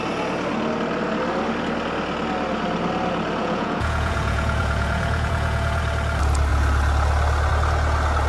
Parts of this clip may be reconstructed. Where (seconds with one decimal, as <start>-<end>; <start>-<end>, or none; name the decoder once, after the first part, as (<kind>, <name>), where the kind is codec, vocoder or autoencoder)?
3.4-5.8 (vocoder, Vocos)